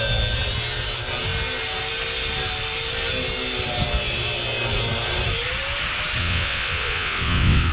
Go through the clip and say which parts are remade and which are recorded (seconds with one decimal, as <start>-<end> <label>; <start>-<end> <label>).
0.0-6.2 recorded; 6.2-7.7 remade